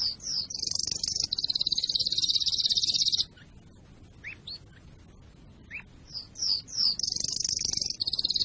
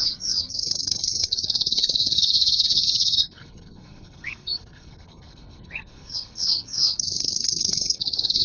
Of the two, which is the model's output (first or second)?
second